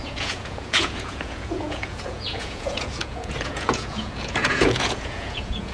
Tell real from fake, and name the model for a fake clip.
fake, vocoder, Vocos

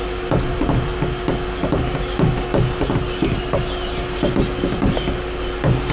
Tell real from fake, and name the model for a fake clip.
real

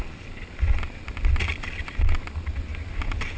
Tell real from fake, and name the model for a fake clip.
real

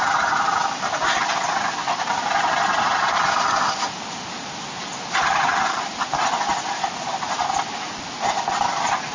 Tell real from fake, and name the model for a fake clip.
real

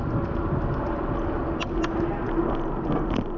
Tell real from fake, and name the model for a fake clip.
real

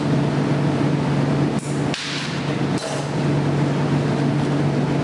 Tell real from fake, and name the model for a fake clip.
real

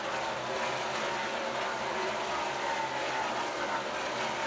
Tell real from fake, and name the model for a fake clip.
real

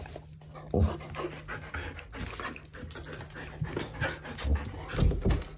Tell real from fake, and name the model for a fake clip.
real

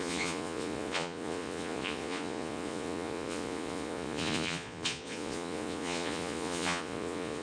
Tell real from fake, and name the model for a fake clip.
fake, vocoder, Vocos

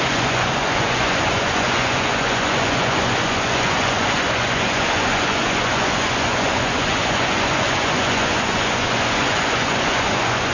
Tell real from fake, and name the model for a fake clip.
fake, vocoder, Vocos